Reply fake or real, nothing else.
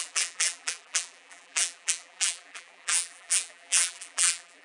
fake